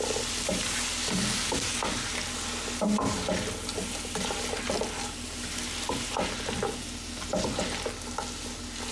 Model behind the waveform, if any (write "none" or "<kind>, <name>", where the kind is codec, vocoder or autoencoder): none